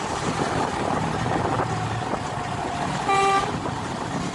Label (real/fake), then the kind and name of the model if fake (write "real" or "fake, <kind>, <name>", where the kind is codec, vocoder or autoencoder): real